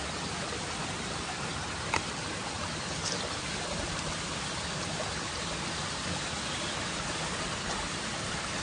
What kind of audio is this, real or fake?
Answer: real